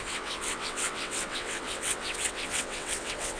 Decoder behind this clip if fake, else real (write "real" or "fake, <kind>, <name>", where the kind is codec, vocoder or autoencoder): fake, vocoder, WaveNeXt